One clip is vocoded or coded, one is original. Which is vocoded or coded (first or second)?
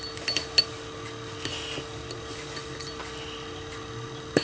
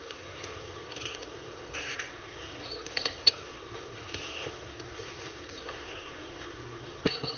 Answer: second